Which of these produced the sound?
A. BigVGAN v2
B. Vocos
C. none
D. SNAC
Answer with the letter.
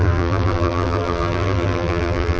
A